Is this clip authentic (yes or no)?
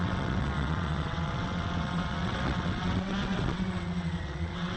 no